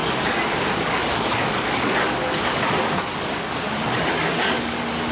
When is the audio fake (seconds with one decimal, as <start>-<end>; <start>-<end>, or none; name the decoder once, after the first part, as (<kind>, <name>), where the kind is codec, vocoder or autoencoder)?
0.0-5.1 (codec, DAC)